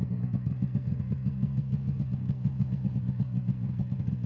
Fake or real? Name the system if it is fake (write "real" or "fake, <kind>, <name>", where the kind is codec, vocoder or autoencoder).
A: fake, codec, SNAC